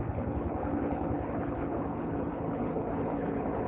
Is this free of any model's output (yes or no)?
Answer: no